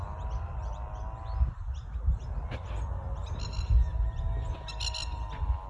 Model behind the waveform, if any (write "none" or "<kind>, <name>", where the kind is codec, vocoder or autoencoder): none